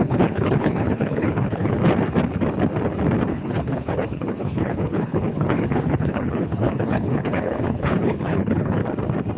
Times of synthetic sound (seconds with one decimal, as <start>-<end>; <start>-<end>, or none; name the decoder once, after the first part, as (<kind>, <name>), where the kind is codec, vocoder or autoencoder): 0.0-1.8 (codec, HILCodec); 3.3-8.8